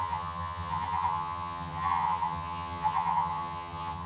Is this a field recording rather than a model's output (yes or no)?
no